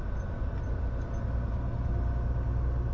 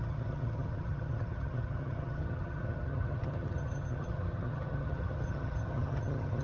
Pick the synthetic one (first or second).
second